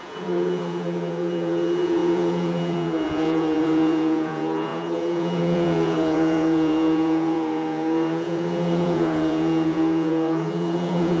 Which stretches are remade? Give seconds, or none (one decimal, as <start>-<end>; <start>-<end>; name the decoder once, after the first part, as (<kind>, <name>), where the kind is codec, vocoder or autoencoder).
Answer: 0.0-11.2 (vocoder, Vocos)